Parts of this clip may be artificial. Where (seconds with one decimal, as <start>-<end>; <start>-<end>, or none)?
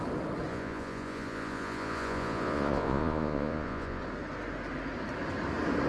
0.5-4.0